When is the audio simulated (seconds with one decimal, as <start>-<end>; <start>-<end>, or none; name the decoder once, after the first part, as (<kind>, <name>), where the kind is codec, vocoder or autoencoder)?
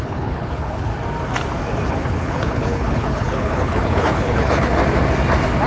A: 0.0-0.9 (codec, HILCodec); 1.9-4.8